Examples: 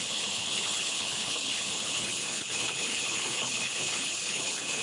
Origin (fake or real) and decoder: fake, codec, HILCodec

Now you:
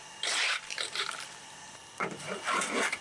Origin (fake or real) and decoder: fake, vocoder, BigVGAN v2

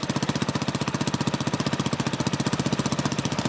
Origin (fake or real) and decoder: real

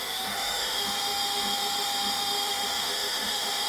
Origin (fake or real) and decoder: fake, autoencoder, DAC-VAE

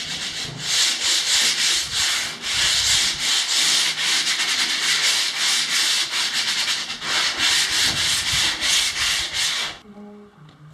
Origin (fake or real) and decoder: real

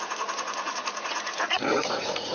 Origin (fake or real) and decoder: fake, vocoder, Vocos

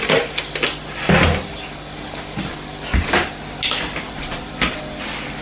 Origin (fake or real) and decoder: real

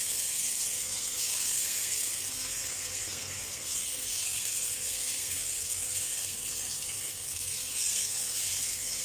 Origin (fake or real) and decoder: fake, codec, SNAC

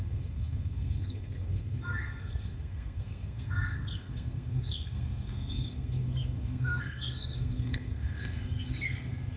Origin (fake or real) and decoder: fake, codec, SNAC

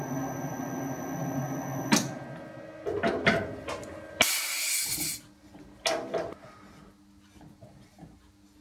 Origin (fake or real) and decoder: real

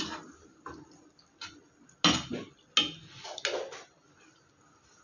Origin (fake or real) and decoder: real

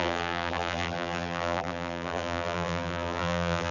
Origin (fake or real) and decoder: fake, vocoder, BigVGAN v2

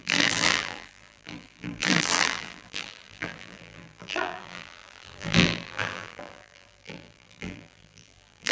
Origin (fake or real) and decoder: fake, vocoder, BigVGAN v2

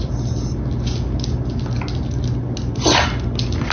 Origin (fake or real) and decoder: real